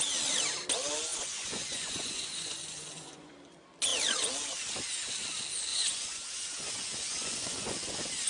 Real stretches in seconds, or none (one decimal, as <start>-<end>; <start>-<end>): 0.0-1.1; 3.3-5.7; 7.9-8.3